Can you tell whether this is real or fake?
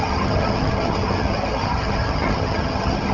fake